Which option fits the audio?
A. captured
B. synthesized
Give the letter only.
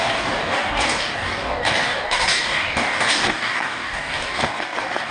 B